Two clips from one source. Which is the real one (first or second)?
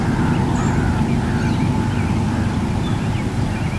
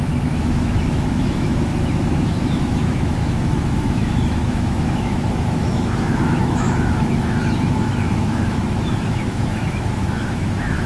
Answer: first